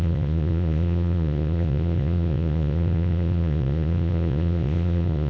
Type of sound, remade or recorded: remade